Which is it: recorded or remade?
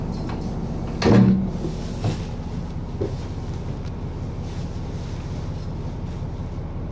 recorded